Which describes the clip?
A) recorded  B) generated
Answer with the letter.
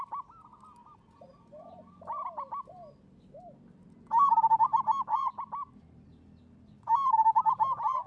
A